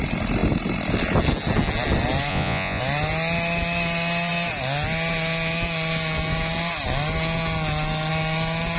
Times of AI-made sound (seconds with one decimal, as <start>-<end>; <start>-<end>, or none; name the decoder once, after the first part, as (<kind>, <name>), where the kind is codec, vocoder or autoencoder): 2.3-2.8 (vocoder, Vocos)

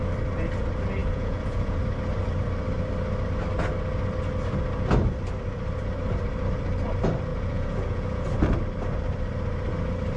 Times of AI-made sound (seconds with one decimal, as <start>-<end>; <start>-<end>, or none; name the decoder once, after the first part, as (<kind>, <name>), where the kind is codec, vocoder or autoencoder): 1.0-1.8 (vocoder, Vocos); 7.3-8.2